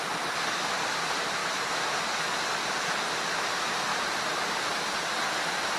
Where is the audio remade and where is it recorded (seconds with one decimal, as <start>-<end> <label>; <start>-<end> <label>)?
0.0-1.4 remade; 1.4-2.8 recorded; 2.8-3.9 remade; 3.9-5.8 recorded